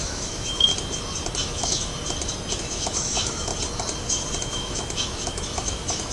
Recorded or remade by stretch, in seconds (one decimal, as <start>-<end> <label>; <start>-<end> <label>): 0.0-0.7 remade; 0.7-1.4 recorded; 1.4-1.9 remade; 1.9-2.6 recorded; 2.6-3.5 remade; 3.5-4.4 recorded; 4.4-6.1 remade